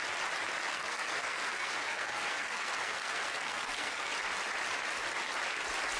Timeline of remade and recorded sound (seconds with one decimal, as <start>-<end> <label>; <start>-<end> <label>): 0.0-0.7 recorded; 0.7-4.1 remade; 4.1-6.0 recorded